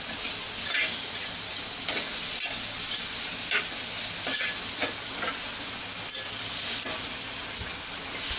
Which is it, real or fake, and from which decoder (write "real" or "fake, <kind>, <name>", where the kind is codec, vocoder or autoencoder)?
real